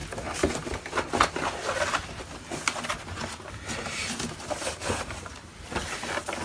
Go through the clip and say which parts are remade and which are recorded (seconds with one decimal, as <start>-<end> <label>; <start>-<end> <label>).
0.0-4.7 recorded; 4.7-5.3 remade; 5.3-6.4 recorded